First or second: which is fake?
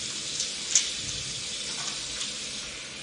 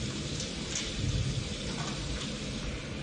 second